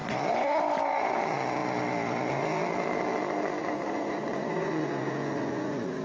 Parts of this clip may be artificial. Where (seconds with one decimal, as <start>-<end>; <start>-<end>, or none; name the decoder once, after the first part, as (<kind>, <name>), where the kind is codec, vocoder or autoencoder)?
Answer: 3.6-6.0 (vocoder, Vocos)